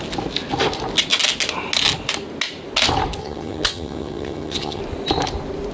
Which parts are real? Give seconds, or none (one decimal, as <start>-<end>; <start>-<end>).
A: 0.0-3.2; 4.8-5.7